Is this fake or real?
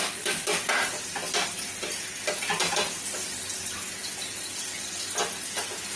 real